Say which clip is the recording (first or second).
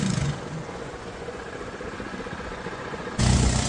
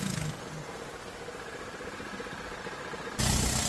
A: second